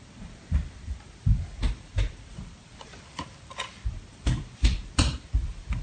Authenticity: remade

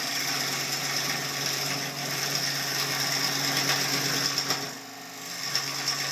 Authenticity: recorded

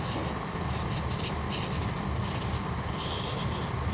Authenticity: recorded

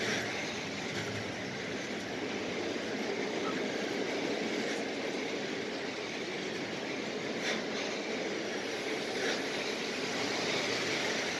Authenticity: recorded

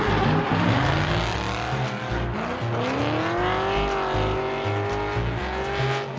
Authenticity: recorded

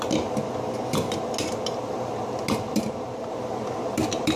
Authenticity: recorded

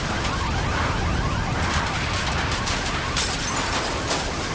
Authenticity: recorded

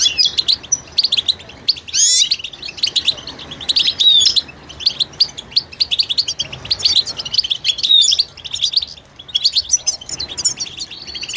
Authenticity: recorded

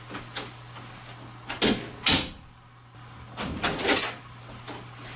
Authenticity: recorded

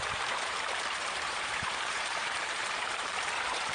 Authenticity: remade